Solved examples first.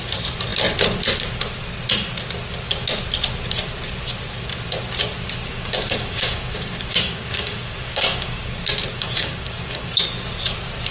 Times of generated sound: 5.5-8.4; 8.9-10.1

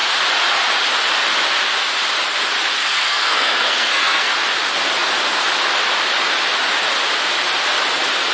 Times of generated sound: 2.8-4.3